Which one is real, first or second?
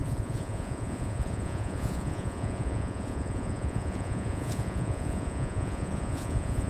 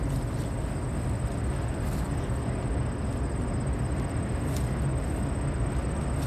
second